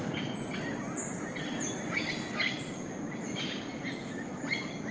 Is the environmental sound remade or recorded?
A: recorded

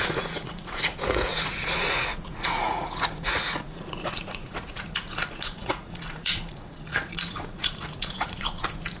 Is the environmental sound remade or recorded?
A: remade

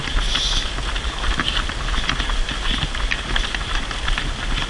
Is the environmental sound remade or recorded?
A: recorded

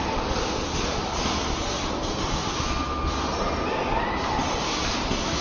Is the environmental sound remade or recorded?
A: recorded